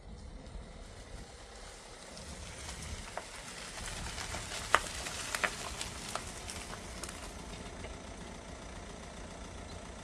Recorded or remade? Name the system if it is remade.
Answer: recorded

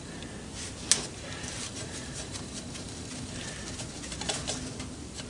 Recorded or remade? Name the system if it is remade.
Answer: recorded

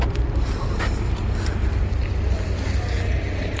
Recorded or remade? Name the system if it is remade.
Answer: recorded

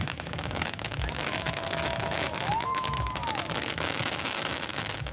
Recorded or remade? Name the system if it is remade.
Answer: remade, autoencoder, DAC-VAE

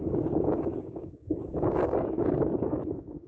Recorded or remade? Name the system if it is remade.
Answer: remade, codec, DAC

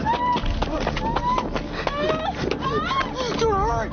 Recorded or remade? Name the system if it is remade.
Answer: recorded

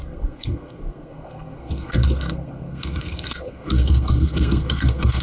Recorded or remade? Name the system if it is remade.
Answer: remade, codec, SNAC